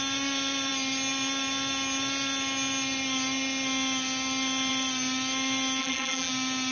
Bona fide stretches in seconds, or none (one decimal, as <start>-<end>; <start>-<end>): 0.0-5.8; 6.3-6.7